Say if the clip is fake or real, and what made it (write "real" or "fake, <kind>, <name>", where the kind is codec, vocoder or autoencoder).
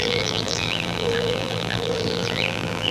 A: fake, vocoder, BigVGAN v2